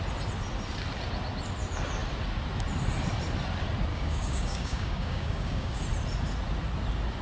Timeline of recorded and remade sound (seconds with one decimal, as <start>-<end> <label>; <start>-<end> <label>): 0.0-3.9 recorded; 3.9-5.8 remade; 5.8-7.2 recorded